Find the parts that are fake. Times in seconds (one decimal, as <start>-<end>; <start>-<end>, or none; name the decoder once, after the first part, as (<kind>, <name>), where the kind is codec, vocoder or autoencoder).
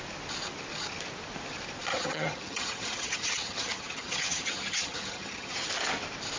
1.9-5.7 (vocoder, HiFi-GAN)